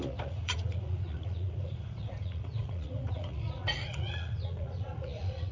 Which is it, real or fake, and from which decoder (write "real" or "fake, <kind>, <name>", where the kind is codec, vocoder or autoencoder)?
fake, vocoder, Vocos